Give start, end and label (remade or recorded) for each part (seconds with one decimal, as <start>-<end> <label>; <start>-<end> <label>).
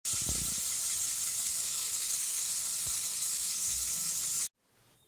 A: 0.0-1.0 recorded; 1.0-4.1 remade; 4.1-5.1 recorded